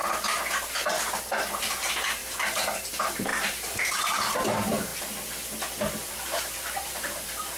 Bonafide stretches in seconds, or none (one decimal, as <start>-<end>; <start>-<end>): 0.0-1.6; 4.9-6.1

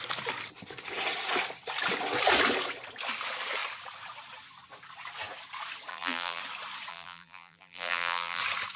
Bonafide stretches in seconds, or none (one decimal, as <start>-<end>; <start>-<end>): 0.0-5.9; 6.4-6.9; 8.4-8.8